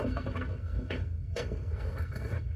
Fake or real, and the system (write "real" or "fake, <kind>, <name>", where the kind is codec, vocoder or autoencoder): fake, codec, SNAC